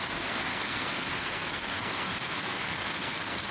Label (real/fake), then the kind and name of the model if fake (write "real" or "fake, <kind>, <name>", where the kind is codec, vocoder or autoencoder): fake, codec, SNAC